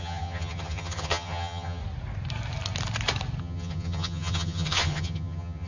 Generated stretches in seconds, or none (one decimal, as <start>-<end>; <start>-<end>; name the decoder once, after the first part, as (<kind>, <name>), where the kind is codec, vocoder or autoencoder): 0.0-1.8 (vocoder, HiFi-GAN); 3.4-5.7